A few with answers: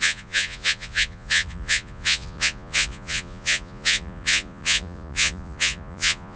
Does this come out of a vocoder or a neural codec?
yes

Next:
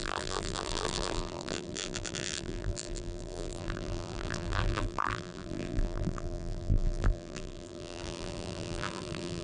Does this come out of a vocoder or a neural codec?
yes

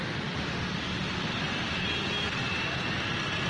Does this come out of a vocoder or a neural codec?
no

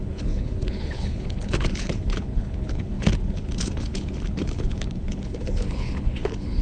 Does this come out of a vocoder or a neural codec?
yes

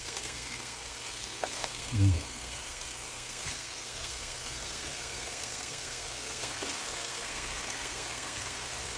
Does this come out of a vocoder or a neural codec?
yes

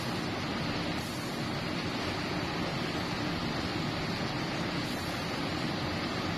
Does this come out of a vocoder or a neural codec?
no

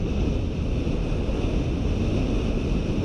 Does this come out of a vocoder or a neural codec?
no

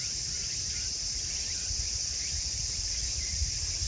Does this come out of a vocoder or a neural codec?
no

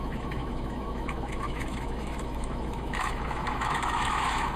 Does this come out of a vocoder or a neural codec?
yes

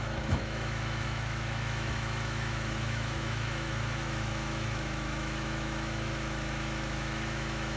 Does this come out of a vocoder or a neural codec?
yes